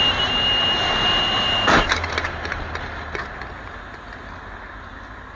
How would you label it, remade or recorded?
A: recorded